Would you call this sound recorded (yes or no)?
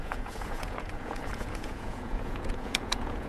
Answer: no